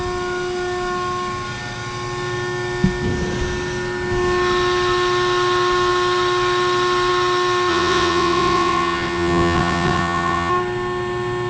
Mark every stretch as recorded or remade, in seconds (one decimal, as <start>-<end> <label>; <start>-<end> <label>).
0.0-7.7 recorded; 7.7-10.5 remade; 10.5-11.5 recorded